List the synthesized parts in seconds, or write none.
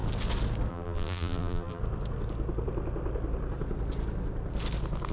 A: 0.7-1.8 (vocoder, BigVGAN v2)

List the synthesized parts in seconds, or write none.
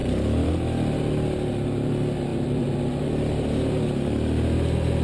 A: 0.0-0.5 (vocoder, BigVGAN v2); 2.3-3.1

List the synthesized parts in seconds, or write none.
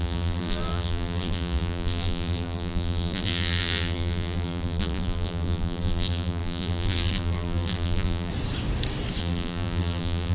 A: 0.0-8.3 (vocoder, BigVGAN v2); 9.2-10.3